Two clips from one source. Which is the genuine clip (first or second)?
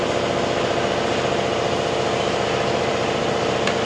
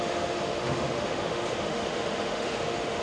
first